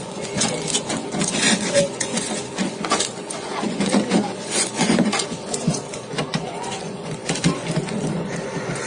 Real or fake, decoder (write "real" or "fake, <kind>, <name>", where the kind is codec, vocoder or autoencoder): fake, vocoder, Vocos